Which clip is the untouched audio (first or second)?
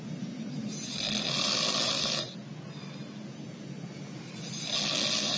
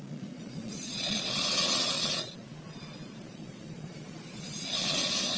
first